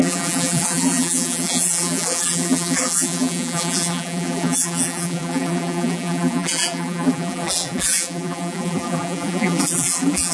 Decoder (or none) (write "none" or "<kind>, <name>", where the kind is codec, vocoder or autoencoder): vocoder, BigVGAN v2